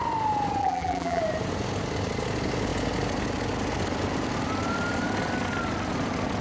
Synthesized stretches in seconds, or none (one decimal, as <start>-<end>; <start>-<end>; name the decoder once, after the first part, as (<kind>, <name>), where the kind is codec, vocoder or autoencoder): 0.6-1.2 (vocoder, BigVGAN v2)